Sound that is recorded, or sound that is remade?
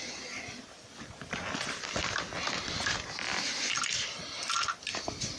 recorded